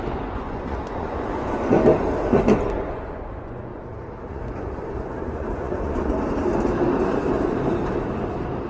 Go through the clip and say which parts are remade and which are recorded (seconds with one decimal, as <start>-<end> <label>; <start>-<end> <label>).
0.0-1.9 remade; 1.9-2.9 recorded; 2.9-3.7 remade; 3.7-4.3 recorded; 4.3-6.1 remade; 6.1-8.7 recorded

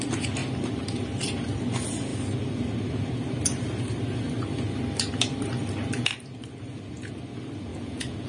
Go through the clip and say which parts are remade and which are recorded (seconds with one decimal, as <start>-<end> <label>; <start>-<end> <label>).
0.0-7.7 recorded; 7.7-8.3 remade